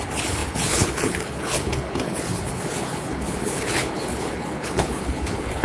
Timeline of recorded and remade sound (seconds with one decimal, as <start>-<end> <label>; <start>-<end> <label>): 0.0-5.6 remade